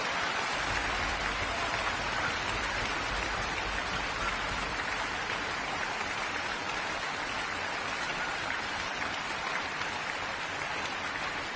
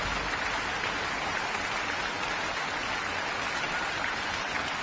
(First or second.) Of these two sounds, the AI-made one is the first